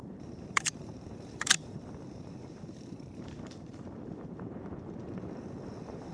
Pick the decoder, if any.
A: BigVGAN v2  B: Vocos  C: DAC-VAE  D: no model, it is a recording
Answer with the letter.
A